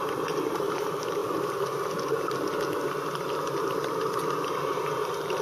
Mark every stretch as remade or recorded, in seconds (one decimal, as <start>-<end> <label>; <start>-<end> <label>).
0.0-1.2 remade; 1.2-4.4 recorded; 4.4-5.4 remade